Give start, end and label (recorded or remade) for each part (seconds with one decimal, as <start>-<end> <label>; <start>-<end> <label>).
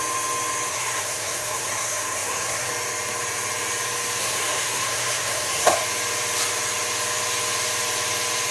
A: 0.0-0.7 recorded; 0.7-2.7 remade; 2.7-4.2 recorded; 4.2-5.8 remade; 5.8-8.5 recorded